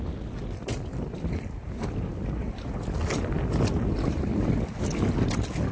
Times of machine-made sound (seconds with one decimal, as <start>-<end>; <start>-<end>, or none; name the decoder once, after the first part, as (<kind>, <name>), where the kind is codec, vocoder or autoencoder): none